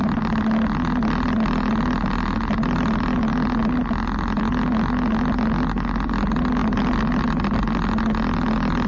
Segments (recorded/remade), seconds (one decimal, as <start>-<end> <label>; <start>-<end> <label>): 0.0-8.9 recorded